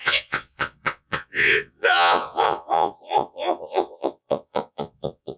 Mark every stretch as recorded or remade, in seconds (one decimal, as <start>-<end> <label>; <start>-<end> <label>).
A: 0.0-5.4 remade